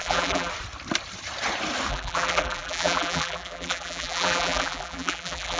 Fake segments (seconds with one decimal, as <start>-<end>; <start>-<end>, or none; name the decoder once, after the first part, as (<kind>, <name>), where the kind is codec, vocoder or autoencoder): 0.0-0.5 (vocoder, BigVGAN v2); 1.9-5.6